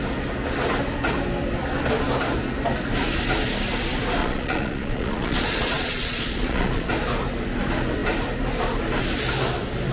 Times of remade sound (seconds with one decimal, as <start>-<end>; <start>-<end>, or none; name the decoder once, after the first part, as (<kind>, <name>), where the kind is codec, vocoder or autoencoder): 4.2-6.9 (vocoder, Vocos)